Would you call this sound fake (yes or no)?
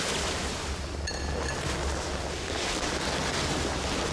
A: no